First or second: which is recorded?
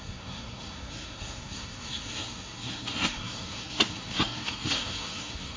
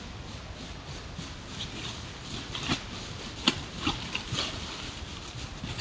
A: second